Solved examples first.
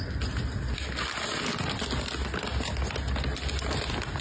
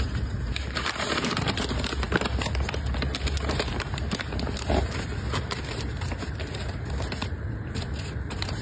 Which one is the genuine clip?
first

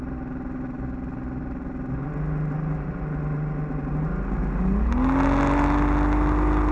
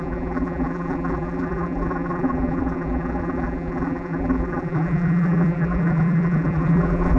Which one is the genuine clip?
first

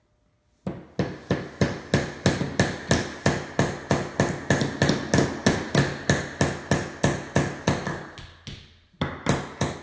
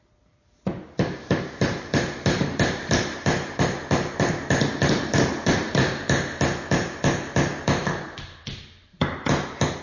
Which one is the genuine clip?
first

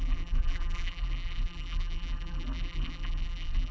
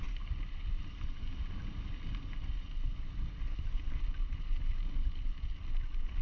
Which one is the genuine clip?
second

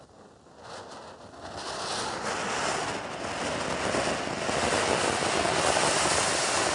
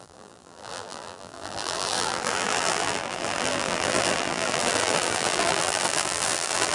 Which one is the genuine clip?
first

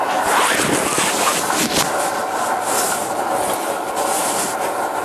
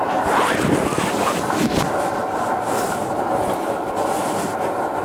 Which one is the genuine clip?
first